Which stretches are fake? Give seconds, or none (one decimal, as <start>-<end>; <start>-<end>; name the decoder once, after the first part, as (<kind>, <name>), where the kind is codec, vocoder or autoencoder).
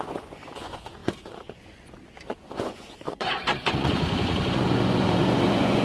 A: 0.0-5.8 (vocoder, Vocos)